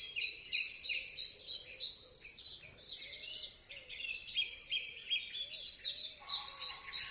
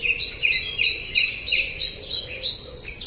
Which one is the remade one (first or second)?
second